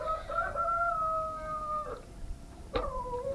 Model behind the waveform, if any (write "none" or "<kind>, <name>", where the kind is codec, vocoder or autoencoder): vocoder, BigVGAN v2